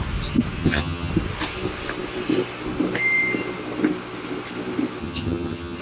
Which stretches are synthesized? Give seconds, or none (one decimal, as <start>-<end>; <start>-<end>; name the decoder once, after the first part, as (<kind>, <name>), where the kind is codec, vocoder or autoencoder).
0.6-1.1 (vocoder, HiFi-GAN); 5.0-5.8